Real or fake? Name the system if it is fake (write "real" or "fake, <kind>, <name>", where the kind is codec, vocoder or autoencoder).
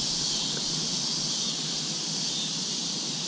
real